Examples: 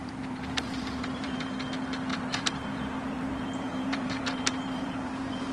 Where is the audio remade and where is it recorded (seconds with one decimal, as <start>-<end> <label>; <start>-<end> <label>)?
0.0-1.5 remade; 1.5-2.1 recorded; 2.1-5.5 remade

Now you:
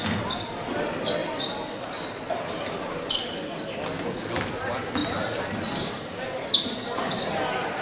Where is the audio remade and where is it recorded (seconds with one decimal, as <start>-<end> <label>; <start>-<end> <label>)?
0.0-7.8 recorded

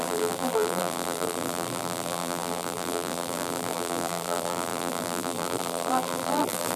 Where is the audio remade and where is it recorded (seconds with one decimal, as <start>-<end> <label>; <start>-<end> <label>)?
0.0-6.8 remade

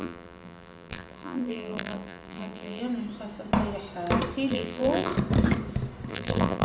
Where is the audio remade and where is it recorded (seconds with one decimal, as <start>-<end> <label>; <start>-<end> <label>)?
0.0-2.8 remade; 2.8-4.5 recorded; 4.5-5.1 remade; 5.1-6.1 recorded; 6.1-6.6 remade